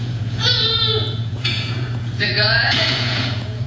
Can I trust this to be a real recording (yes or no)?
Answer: no